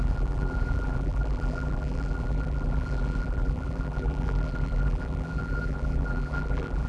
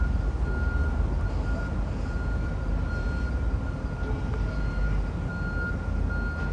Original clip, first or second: second